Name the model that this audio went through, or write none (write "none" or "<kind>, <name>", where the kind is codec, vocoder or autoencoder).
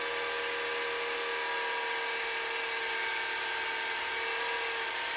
none